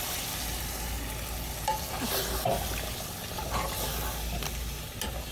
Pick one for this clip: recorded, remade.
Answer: recorded